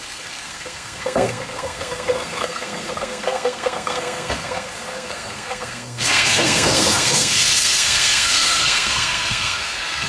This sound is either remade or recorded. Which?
remade